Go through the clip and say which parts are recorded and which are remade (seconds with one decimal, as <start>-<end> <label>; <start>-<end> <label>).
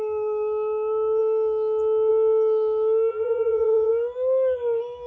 0.0-3.1 recorded; 3.1-3.9 remade; 3.9-5.1 recorded